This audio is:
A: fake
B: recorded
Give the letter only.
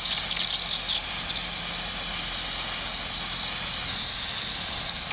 B